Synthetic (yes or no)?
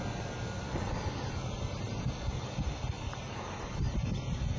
no